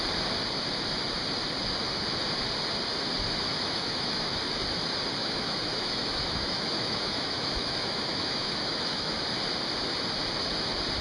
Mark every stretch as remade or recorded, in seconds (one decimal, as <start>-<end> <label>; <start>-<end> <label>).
0.0-3.5 recorded; 3.5-4.4 remade; 4.4-5.2 recorded; 5.2-9.2 remade; 9.2-11.0 recorded